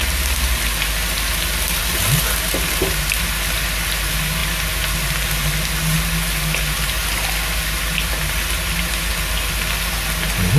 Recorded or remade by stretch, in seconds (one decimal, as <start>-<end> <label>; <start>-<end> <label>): 0.0-1.8 recorded; 1.8-3.2 remade; 3.2-10.6 recorded